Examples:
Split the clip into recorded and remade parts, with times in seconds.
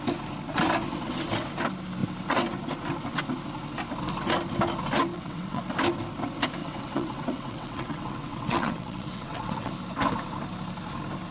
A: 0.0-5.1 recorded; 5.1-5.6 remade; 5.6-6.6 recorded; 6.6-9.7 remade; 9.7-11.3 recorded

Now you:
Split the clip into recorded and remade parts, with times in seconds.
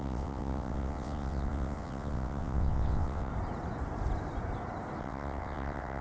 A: 0.0-3.3 remade; 3.3-5.0 recorded; 5.0-6.0 remade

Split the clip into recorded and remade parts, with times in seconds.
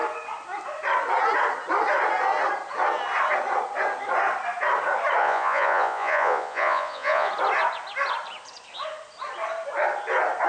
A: 0.0-5.2 recorded; 5.2-7.3 remade; 7.3-10.5 recorded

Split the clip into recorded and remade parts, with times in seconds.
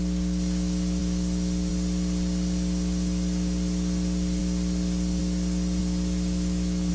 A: 0.0-1.0 recorded; 1.0-1.7 remade; 1.7-5.8 recorded; 5.8-6.9 remade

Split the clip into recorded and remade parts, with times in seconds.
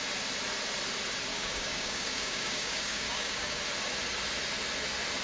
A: 0.0-1.3 recorded; 1.3-3.6 remade; 3.6-5.2 recorded